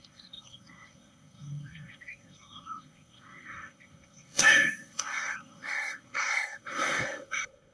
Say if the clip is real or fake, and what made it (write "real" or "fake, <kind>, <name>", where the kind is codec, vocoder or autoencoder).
fake, codec, SNAC